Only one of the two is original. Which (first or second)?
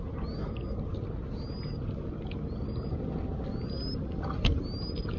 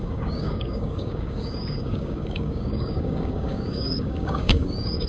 first